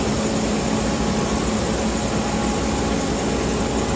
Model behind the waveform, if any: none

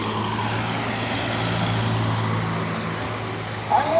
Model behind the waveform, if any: none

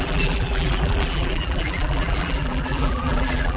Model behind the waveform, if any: vocoder, BigVGAN v2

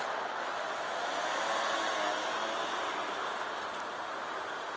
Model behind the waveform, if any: none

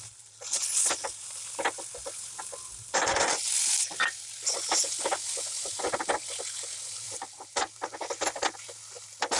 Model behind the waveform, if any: none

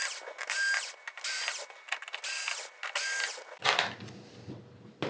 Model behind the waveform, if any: none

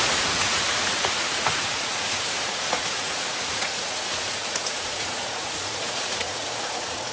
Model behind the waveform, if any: vocoder, Vocos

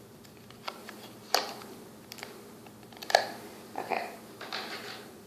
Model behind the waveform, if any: none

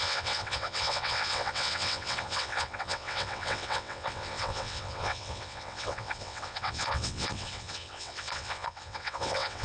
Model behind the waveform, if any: vocoder, WaveNeXt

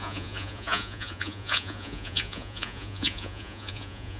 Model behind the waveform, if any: vocoder, Vocos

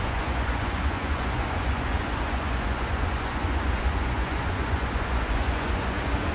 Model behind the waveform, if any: vocoder, Vocos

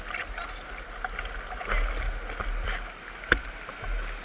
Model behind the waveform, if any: none